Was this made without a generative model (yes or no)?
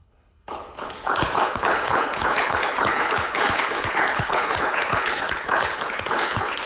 no